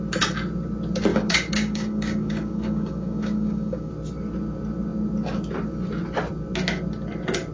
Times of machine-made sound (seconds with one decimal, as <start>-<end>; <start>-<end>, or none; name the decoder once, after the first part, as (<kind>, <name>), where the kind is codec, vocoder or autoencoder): 1.1-3.9 (codec, DAC)